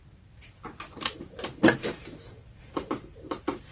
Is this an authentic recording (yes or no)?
no